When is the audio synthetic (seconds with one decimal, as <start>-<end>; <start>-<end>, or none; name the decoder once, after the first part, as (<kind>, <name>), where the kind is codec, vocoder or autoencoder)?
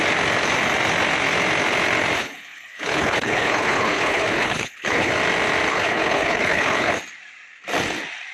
2.2-5.1 (codec, HILCodec); 5.7-6.9